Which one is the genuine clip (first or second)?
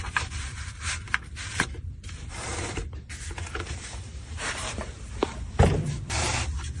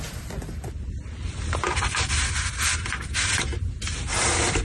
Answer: second